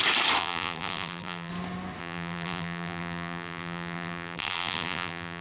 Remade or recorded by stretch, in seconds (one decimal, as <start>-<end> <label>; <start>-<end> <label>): 0.0-0.4 recorded; 0.4-1.5 remade; 1.5-2.0 recorded; 2.0-5.4 remade